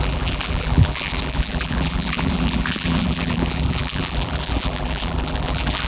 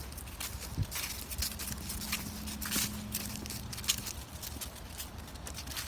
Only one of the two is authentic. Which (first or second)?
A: second